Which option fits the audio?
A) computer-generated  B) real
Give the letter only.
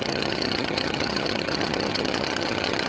A